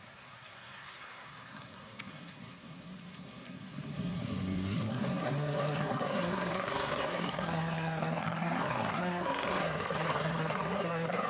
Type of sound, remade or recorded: remade